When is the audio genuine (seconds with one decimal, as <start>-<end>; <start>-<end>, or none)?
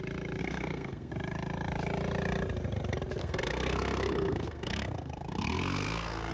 0.0-0.4; 1.1-3.2